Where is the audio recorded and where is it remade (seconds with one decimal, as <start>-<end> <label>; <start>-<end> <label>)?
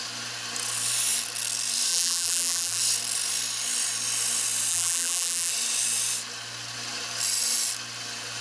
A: 0.0-1.9 recorded; 1.9-2.8 remade; 2.8-4.7 recorded; 4.7-5.5 remade; 5.5-8.4 recorded